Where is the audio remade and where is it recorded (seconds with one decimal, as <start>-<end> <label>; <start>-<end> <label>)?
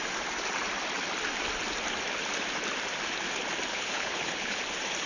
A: 0.0-3.7 recorded; 3.7-4.6 remade; 4.6-5.1 recorded